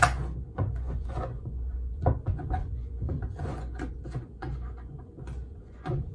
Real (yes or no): no